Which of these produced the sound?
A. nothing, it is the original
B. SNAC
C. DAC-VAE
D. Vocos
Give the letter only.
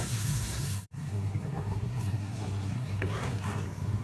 B